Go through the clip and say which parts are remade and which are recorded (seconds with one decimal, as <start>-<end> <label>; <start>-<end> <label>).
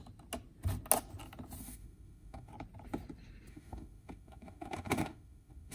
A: 0.0-1.6 recorded; 1.6-2.5 remade; 2.5-3.5 recorded; 3.5-5.7 remade